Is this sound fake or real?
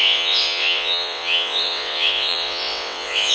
fake